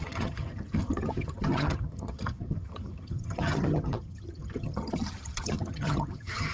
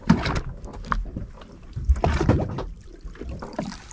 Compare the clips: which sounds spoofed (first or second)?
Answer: first